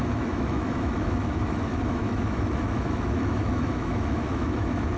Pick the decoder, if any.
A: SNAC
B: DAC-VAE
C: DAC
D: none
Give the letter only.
B